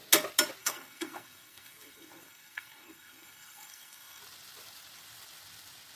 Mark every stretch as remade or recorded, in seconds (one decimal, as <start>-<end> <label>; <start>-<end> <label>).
0.0-0.6 recorded; 0.6-4.2 remade; 4.2-6.0 recorded